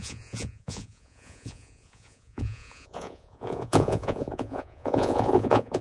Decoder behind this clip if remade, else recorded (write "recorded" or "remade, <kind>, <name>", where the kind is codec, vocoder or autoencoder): remade, vocoder, Vocos